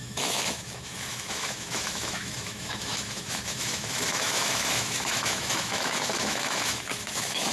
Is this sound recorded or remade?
remade